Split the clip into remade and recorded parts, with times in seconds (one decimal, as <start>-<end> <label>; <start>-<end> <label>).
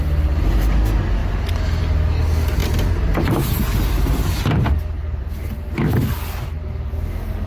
0.0-7.5 recorded